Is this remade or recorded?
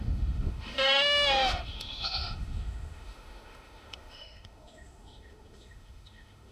remade